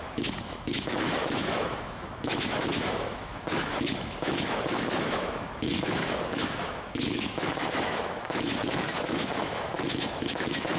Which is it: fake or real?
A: fake